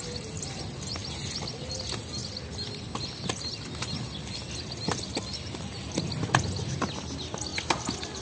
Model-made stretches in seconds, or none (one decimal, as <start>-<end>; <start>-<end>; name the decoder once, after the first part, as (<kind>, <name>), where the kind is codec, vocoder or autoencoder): none